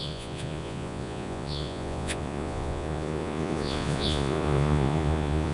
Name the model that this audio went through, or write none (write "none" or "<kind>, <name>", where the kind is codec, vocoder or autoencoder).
vocoder, Vocos